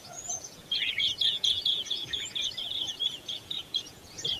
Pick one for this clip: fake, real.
fake